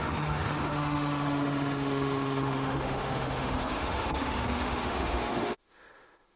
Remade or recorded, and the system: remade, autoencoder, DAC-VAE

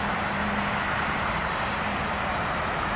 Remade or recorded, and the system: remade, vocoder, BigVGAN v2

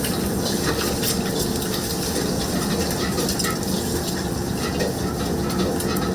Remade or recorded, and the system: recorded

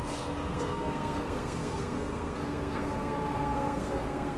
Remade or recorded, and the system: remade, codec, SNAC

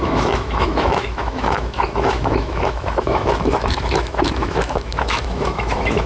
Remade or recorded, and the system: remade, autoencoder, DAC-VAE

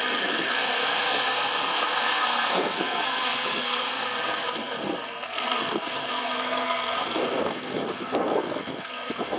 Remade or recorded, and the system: remade, codec, SNAC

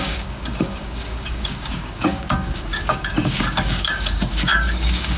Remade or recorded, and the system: remade, codec, DAC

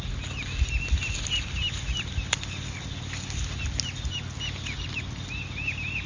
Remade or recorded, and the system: recorded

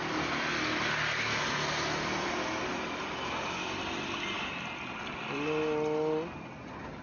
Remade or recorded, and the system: recorded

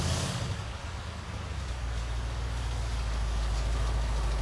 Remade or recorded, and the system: remade, codec, DAC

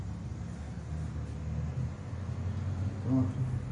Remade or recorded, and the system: recorded